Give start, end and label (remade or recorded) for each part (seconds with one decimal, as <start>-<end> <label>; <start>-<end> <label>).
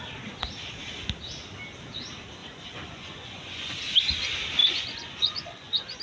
0.0-2.4 recorded; 2.4-3.8 remade; 3.8-4.6 recorded; 4.6-6.0 remade